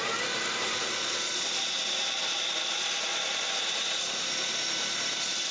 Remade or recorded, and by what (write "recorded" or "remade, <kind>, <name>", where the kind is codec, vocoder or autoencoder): remade, vocoder, BigVGAN v2